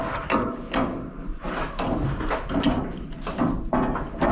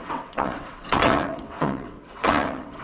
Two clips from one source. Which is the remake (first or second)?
second